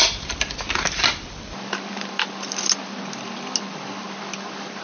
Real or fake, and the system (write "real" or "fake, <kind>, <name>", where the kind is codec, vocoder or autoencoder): real